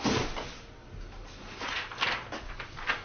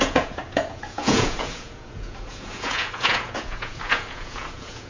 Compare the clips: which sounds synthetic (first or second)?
second